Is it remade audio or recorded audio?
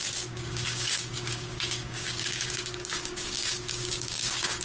remade